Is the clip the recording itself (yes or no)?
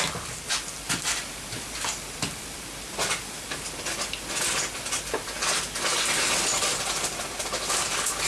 yes